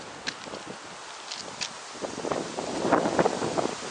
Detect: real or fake real